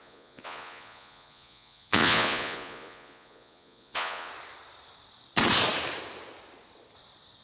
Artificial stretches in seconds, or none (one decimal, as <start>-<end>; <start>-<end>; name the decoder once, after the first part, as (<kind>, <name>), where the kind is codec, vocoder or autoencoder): 0.0-4.3 (vocoder, Vocos)